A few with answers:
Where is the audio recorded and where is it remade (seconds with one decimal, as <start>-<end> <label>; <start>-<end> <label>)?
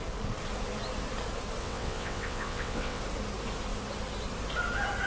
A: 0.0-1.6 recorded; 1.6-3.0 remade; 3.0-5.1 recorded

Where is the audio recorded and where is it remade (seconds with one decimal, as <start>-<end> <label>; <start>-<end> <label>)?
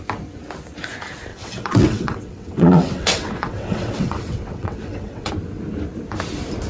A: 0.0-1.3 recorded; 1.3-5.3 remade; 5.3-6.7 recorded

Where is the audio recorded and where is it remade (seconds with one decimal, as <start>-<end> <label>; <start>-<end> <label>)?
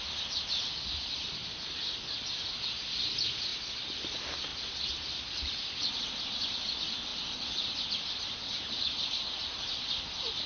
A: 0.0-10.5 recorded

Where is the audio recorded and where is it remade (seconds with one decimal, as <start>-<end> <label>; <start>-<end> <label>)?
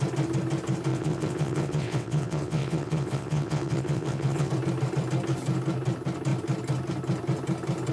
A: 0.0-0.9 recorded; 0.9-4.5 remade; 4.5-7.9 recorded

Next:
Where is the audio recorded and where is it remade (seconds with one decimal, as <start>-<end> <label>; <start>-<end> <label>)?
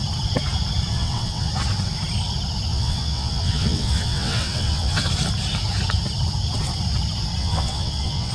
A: 0.0-0.9 recorded; 0.9-1.5 remade; 1.5-2.7 recorded; 2.7-5.1 remade; 5.1-7.4 recorded; 7.4-8.3 remade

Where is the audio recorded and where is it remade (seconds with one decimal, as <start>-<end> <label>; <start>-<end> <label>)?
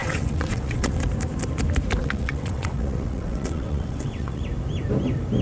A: 0.0-1.0 remade; 1.0-2.0 recorded; 2.0-4.4 remade; 4.4-5.4 recorded